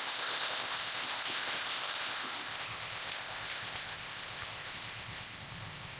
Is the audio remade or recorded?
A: remade